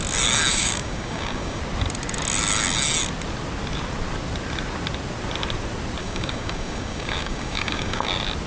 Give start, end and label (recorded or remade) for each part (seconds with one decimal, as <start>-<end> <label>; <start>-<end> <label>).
0.0-0.5 recorded; 0.5-1.6 remade; 1.6-6.0 recorded; 6.0-8.1 remade; 8.1-8.5 recorded